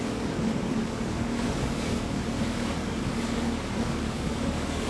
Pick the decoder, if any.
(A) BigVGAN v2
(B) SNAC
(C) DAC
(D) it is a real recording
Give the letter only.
C